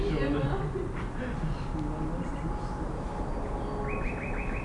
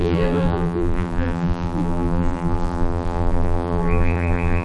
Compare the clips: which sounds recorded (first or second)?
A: first